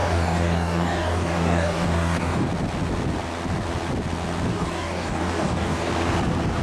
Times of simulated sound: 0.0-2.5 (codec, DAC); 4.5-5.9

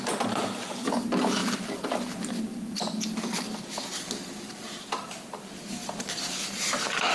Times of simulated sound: none

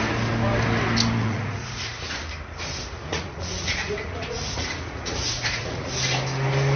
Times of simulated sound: 1.2-1.9 (vocoder, Vocos); 3.1-5.9

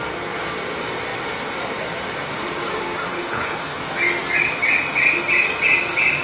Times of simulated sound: 3.1-3.8 (codec, HILCodec)

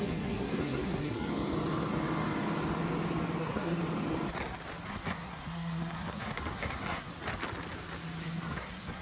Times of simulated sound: 0.0-1.3 (codec, SNAC); 3.4-3.8; 4.9-7.1; 8.2-9.0

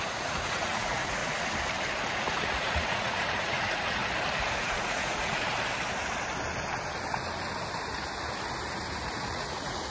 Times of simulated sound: 0.0-1.2 (vocoder, Vocos); 2.3-4.0; 4.6-5.5; 9.1-9.9